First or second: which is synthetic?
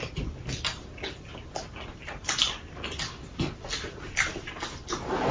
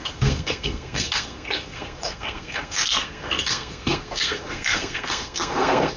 second